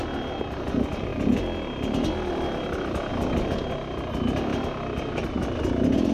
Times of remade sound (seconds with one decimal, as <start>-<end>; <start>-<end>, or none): none